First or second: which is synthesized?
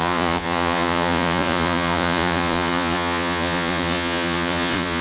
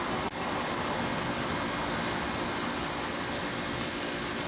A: first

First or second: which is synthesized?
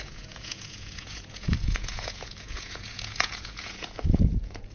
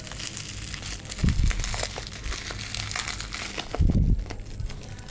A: first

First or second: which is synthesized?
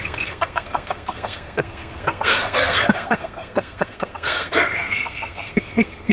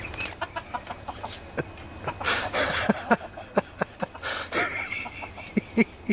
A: first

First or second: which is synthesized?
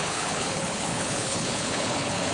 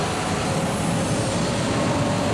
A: first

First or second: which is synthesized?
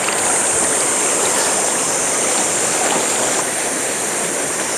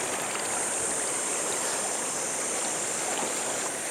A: second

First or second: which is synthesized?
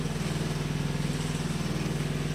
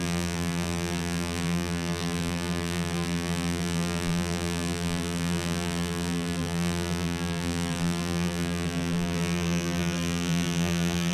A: second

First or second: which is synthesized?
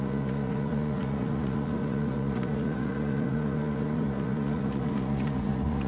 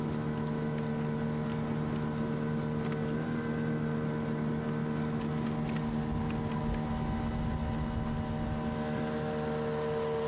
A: first